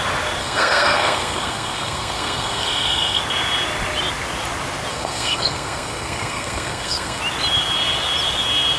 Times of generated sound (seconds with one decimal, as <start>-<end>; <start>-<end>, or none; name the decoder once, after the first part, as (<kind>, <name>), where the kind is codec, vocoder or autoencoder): 0.4-3.2 (codec, SNAC); 4.9-7.2